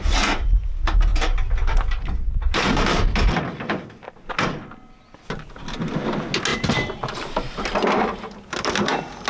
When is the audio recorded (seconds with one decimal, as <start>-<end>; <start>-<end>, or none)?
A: 0.0-1.1; 3.7-6.5; 8.4-9.3

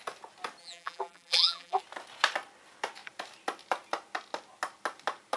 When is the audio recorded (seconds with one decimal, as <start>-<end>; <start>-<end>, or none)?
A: 0.0-0.6; 1.8-5.4

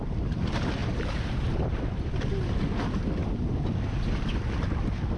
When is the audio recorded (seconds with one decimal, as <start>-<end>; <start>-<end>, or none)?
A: 0.0-0.8; 1.8-5.2

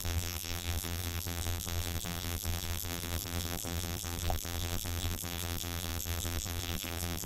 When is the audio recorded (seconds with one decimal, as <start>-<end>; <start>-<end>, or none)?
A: none

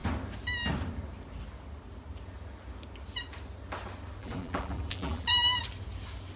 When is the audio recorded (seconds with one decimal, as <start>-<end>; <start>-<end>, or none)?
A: 0.0-4.2; 5.6-6.4

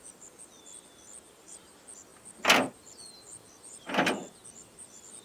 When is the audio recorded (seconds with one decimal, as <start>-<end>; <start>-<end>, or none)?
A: 0.0-5.2